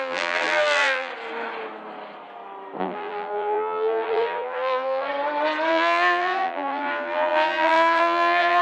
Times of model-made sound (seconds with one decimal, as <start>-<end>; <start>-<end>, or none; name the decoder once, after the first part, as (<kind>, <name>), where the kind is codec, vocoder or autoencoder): 0.0-1.1 (vocoder, BigVGAN v2); 2.8-5.1; 5.7-8.6

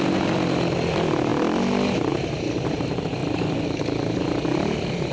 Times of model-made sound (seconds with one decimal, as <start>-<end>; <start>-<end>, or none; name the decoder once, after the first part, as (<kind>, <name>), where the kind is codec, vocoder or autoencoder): none

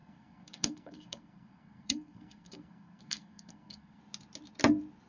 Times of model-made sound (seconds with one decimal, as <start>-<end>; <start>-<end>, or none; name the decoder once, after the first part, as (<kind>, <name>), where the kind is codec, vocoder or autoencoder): 0.0-4.0 (codec, SNAC)

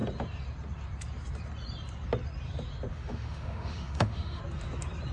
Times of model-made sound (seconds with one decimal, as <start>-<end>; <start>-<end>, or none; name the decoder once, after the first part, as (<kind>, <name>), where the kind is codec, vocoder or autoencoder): 2.9-4.4 (autoencoder, DAC-VAE)

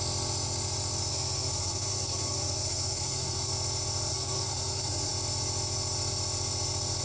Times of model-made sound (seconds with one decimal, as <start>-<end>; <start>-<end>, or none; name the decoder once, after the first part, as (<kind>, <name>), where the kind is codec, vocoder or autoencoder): 1.1-3.5 (codec, SNAC); 4.1-5.1

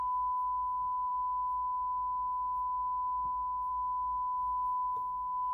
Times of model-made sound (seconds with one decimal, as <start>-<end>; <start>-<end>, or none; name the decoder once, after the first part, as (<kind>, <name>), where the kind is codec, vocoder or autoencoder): none

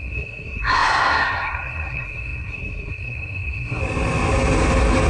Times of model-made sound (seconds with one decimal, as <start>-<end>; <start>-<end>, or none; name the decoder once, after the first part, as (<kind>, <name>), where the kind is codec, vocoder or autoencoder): 0.0-3.8 (codec, SNAC)